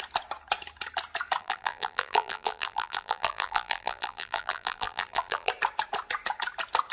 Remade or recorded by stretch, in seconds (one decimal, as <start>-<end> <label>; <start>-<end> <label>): 0.0-1.4 recorded; 1.4-5.5 remade; 5.5-6.9 recorded